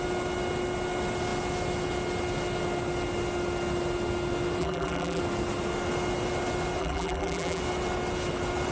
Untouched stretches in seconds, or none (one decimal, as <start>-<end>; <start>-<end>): 0.0-4.6; 5.2-6.8; 7.6-8.7